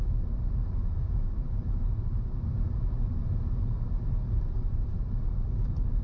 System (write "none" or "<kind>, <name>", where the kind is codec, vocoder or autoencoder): vocoder, BigVGAN v2